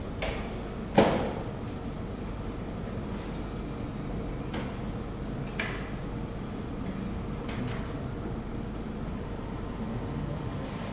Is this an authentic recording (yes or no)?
yes